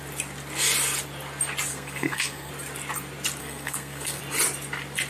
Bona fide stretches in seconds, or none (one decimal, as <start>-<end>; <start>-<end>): 0.0-1.7; 2.5-3.4; 4.2-5.1